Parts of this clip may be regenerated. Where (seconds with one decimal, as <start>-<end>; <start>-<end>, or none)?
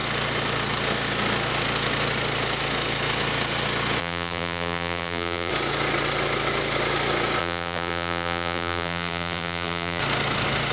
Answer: 4.0-5.5; 7.4-10.0